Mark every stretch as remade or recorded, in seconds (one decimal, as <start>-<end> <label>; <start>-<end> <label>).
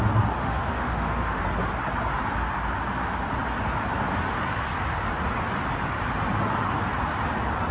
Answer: 0.0-0.4 recorded; 0.4-1.4 remade; 1.4-7.7 recorded